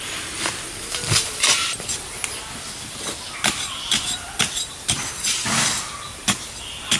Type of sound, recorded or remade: recorded